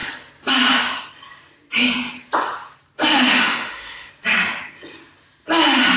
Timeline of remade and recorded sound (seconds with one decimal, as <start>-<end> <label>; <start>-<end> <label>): 0.0-3.1 recorded; 3.1-4.1 remade; 4.1-6.0 recorded